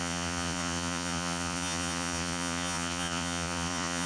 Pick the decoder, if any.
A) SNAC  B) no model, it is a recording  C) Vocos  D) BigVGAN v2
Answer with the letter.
C